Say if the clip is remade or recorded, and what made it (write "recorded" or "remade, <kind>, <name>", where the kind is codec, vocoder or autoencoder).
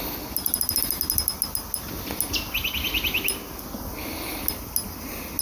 recorded